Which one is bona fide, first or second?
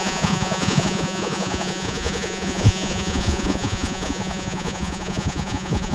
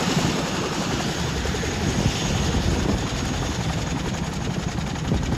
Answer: second